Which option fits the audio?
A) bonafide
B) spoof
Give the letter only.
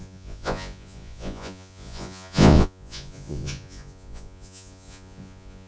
B